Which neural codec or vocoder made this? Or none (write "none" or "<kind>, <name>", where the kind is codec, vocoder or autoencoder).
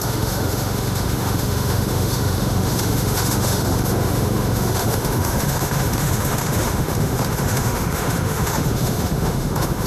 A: autoencoder, DAC-VAE